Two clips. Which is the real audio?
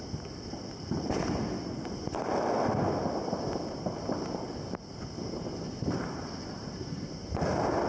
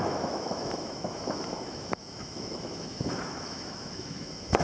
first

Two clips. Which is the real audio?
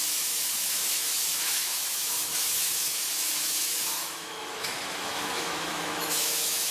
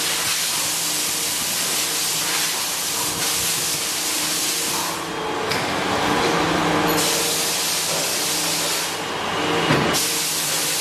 second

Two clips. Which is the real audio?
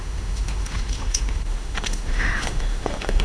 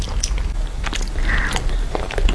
second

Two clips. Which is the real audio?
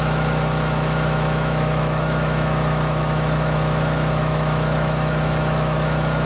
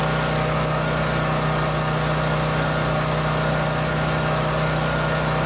second